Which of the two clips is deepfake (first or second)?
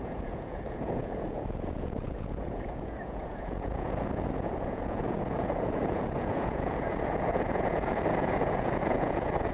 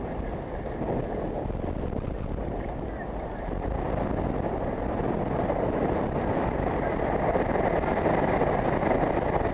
first